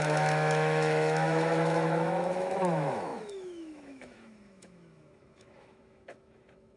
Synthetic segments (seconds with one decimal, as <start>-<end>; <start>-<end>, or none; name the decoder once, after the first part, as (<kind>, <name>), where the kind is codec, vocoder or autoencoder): 0.0-6.8 (autoencoder, DAC-VAE)